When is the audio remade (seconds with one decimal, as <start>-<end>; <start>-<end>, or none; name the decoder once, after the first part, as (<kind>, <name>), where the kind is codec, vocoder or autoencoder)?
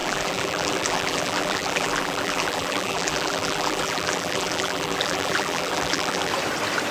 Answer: 0.0-6.3 (vocoder, BigVGAN v2)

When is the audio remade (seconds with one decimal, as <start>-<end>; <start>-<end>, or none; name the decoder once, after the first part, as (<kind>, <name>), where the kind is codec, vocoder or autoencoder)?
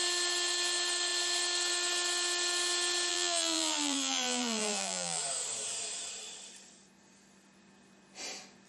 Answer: 3.1-5.2 (vocoder, BigVGAN v2)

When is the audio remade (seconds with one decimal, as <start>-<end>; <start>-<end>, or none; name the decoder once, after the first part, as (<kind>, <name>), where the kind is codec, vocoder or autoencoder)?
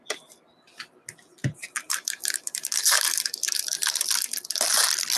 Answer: 1.4-3.2 (vocoder, BigVGAN v2)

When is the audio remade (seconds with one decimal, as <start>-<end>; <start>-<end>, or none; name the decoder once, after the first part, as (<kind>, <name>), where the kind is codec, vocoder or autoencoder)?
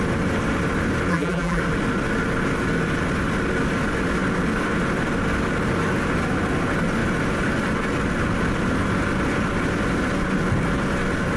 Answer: 1.1-1.6 (vocoder, BigVGAN v2)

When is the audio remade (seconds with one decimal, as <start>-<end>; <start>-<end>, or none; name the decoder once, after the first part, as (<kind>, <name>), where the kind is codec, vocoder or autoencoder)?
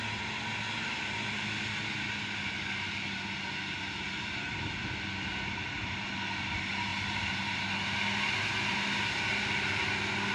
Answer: 6.9-7.6 (vocoder, BigVGAN v2)